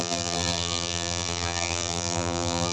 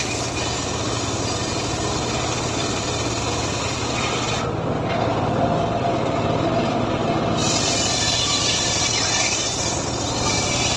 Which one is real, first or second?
second